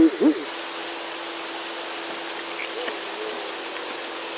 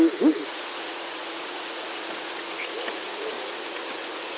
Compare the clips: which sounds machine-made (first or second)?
second